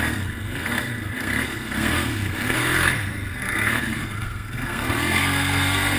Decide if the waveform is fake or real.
fake